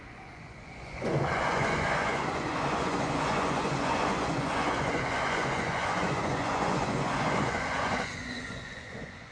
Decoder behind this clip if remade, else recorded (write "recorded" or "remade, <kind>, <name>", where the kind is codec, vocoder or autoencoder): remade, vocoder, Vocos